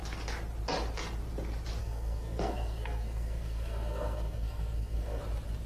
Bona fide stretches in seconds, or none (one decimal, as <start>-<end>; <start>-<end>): 0.0-1.8; 5.2-5.7